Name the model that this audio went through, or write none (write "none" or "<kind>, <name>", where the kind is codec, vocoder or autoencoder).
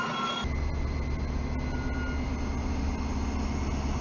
none